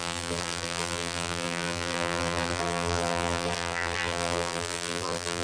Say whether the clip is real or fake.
fake